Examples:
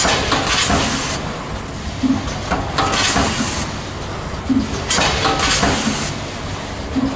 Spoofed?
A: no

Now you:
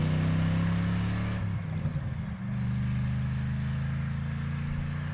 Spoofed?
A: no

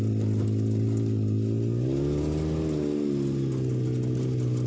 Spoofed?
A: no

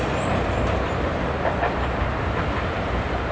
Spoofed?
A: yes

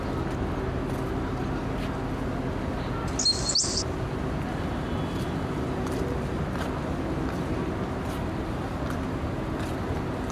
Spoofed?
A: no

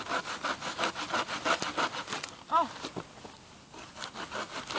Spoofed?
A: no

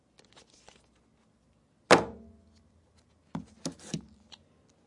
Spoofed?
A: no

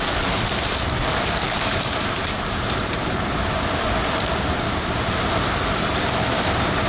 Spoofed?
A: yes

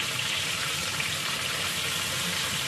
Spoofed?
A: yes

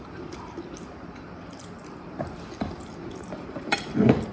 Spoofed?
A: yes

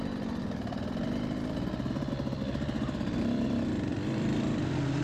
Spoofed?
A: yes